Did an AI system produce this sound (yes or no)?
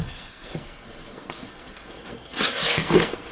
yes